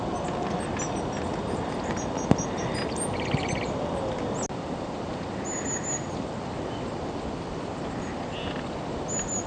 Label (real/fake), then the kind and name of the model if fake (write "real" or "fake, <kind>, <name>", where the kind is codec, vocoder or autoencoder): real